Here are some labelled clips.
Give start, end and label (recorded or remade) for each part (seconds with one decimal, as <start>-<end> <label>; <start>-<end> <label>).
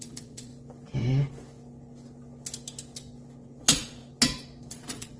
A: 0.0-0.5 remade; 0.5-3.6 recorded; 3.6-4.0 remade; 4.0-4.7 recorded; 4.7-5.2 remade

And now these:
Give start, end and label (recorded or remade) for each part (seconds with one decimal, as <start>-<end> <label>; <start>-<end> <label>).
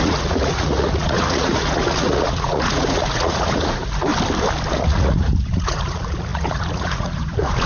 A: 0.0-4.1 remade; 4.1-4.7 recorded; 4.7-7.7 remade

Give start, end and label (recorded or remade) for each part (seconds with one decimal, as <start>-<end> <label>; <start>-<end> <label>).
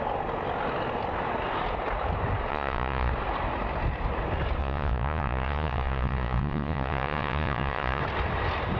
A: 0.0-2.5 recorded; 2.5-3.1 remade; 3.1-4.6 recorded; 4.6-8.0 remade; 8.0-8.8 recorded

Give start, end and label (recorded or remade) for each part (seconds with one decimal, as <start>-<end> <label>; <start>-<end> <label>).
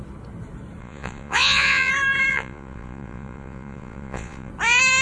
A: 0.0-0.8 recorded; 0.8-1.9 remade; 1.9-2.3 recorded; 2.3-4.5 remade; 4.5-5.0 recorded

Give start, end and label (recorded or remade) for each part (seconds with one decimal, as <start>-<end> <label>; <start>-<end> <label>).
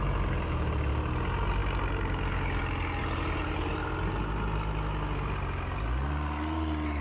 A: 0.0-7.0 recorded